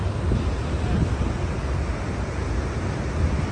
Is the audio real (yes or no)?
yes